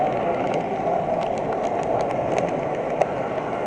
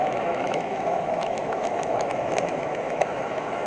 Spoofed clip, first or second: second